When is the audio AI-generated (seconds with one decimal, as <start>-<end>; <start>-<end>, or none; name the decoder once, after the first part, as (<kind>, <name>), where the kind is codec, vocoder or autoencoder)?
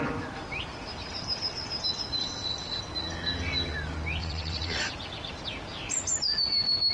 2.2-2.8 (vocoder, WaveNeXt); 4.2-4.9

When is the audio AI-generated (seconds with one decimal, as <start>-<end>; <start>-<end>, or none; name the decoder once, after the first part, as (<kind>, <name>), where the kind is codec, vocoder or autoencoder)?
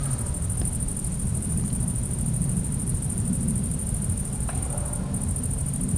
0.9-4.5 (vocoder, BigVGAN v2)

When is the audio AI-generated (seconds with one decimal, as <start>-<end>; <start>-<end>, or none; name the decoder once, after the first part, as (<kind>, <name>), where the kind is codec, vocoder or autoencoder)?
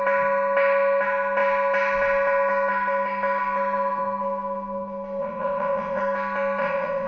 5.2-6.0 (vocoder, WaveNeXt); 6.6-7.1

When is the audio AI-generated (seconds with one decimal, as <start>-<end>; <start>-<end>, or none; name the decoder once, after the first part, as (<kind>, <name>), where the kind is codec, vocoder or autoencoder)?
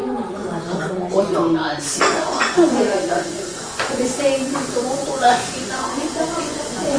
0.0-4.2 (vocoder, Vocos); 5.0-7.0